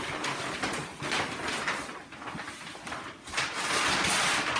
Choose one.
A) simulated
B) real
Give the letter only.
B